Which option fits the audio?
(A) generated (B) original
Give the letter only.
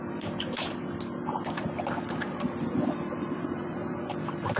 A